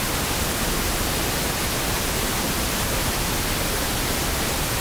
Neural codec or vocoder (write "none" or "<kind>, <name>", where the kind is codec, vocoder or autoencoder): none